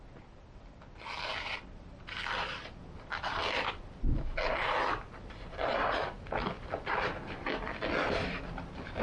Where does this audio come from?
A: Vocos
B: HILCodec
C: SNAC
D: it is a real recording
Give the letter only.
D